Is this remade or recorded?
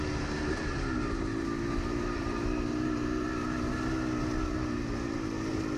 recorded